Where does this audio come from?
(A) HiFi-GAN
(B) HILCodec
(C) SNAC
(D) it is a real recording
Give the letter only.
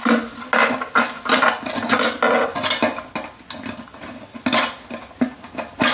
D